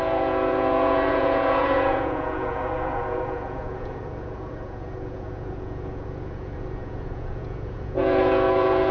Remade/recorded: remade